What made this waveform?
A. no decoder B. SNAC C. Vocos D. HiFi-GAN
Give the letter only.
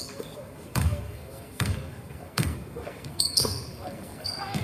B